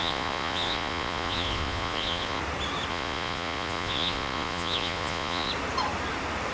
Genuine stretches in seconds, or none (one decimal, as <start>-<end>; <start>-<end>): 2.4-2.9; 5.5-6.5